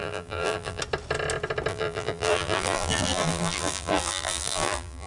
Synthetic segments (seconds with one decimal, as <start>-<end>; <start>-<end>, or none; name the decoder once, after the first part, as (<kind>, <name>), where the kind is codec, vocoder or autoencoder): 0.0-0.8 (vocoder, BigVGAN v2); 1.7-5.1